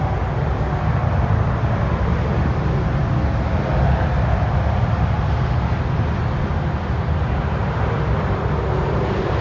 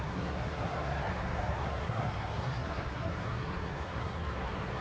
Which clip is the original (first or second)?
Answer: first